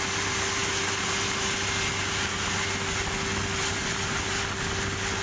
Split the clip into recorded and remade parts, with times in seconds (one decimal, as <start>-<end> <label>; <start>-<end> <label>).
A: 0.0-5.2 recorded